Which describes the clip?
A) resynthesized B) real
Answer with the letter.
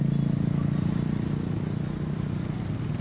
B